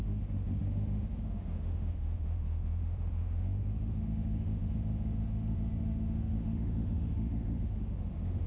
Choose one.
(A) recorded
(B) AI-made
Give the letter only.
B